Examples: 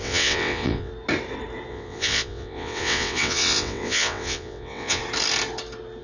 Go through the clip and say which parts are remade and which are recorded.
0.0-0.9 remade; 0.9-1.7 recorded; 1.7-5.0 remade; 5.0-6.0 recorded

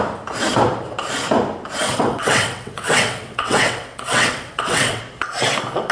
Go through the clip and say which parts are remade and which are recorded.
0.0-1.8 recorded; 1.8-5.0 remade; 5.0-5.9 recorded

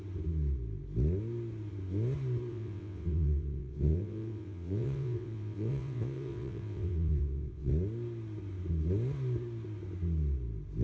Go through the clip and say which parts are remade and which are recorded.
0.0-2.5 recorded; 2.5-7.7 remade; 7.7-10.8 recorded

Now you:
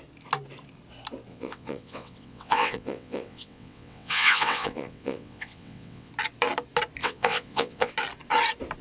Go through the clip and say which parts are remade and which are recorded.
0.0-1.3 recorded; 1.3-6.1 remade; 6.1-7.0 recorded; 7.0-7.9 remade; 7.9-8.8 recorded

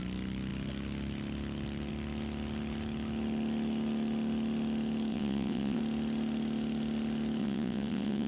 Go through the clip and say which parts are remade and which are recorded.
0.0-5.1 recorded; 5.1-5.8 remade; 5.8-7.4 recorded; 7.4-8.3 remade

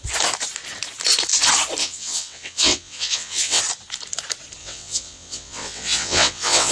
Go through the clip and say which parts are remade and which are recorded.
0.0-1.8 recorded; 1.8-3.6 remade; 3.6-4.6 recorded; 4.6-6.7 remade

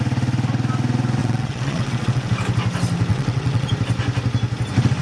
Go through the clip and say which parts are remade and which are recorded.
0.0-1.2 recorded; 1.2-2.3 remade; 2.3-3.1 recorded; 3.1-3.7 remade; 3.7-5.0 recorded

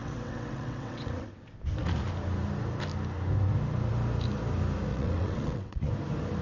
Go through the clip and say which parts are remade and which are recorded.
0.0-1.4 remade; 1.4-4.9 recorded; 4.9-5.9 remade; 5.9-6.4 recorded